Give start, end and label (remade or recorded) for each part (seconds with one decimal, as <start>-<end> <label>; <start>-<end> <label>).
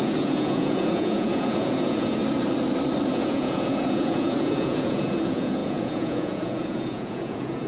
0.0-2.2 remade; 2.2-3.1 recorded; 3.1-7.7 remade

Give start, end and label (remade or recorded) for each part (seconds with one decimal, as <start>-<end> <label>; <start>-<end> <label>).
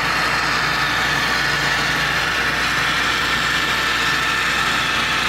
0.0-5.3 recorded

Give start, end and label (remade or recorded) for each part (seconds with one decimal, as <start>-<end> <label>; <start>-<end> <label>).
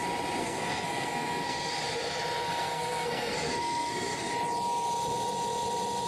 0.0-0.4 recorded; 0.4-1.7 remade; 1.7-2.5 recorded; 2.5-4.3 remade; 4.3-6.1 recorded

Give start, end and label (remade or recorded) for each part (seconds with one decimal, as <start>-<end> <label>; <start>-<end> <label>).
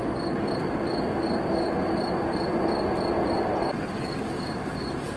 0.0-5.2 recorded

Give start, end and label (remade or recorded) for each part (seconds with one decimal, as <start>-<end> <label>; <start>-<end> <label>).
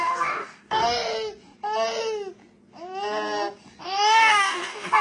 0.0-0.8 remade; 0.8-3.8 recorded; 3.8-5.0 remade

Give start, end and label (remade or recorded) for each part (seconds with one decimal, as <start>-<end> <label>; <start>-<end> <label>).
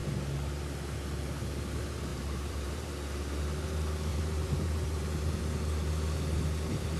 0.0-2.1 recorded; 2.1-2.9 remade; 2.9-4.1 recorded; 4.1-5.4 remade; 5.4-7.0 recorded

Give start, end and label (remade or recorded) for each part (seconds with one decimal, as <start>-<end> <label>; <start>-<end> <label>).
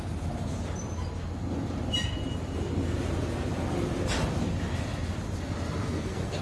0.0-5.8 recorded; 5.8-6.4 remade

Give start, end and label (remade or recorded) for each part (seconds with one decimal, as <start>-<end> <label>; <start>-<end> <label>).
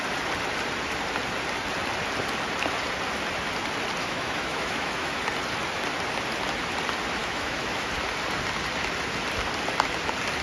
0.0-4.0 recorded; 4.0-5.2 remade; 5.2-7.2 recorded; 7.2-7.9 remade; 7.9-10.4 recorded